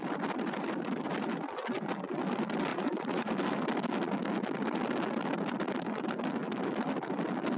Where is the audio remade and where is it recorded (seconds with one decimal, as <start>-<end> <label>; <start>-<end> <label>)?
0.0-2.7 recorded; 2.7-3.3 remade; 3.3-7.6 recorded